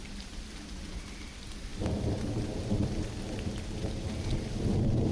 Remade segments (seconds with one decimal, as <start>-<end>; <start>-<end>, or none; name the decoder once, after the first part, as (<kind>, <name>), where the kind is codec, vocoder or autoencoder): none